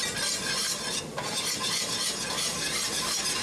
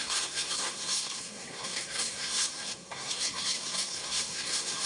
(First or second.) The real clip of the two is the first